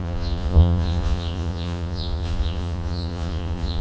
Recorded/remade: remade